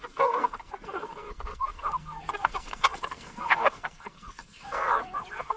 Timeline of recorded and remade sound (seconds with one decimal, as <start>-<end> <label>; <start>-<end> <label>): 0.0-5.6 remade